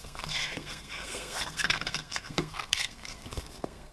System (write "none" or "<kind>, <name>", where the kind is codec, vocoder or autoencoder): codec, SNAC